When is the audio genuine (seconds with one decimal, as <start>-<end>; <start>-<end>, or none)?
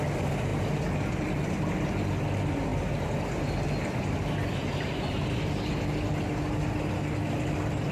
0.0-7.9